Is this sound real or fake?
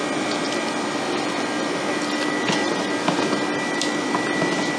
real